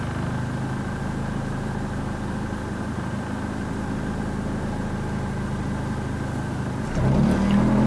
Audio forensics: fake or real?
real